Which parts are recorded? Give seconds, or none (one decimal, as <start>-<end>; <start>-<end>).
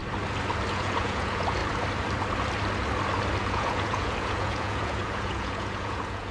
0.0-0.7; 1.6-3.4